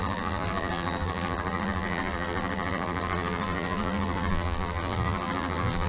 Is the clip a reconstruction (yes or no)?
yes